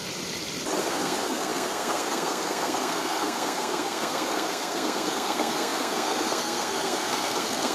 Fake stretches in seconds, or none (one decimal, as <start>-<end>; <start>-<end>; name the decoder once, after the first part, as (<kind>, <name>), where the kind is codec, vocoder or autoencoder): 0.8-7.7 (codec, SNAC)